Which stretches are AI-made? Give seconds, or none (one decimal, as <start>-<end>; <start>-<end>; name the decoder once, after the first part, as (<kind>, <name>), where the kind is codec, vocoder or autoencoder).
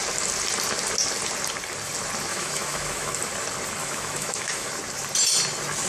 2.3-3.2 (autoencoder, DAC-VAE); 3.8-4.7